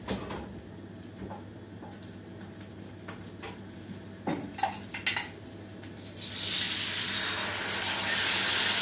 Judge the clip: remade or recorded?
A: recorded